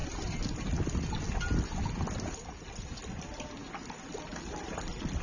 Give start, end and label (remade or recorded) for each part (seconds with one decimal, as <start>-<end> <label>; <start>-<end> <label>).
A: 0.0-5.2 recorded